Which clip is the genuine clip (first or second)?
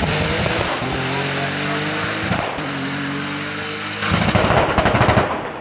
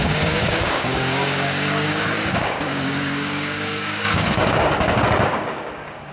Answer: first